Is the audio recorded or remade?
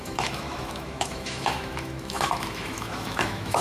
remade